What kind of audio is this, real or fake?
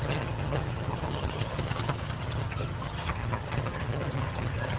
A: fake